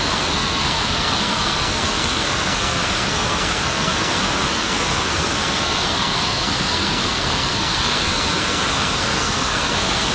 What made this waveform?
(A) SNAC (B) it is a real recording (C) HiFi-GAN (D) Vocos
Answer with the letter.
A